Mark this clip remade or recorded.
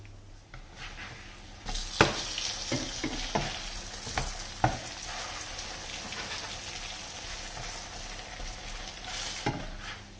recorded